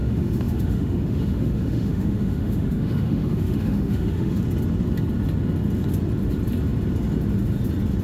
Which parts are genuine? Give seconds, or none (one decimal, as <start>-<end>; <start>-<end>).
4.4-8.0

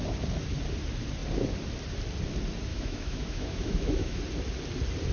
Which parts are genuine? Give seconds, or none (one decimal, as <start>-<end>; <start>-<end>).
0.0-2.7; 4.2-5.1